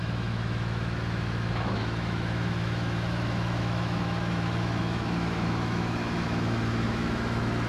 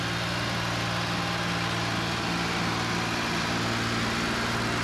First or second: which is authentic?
second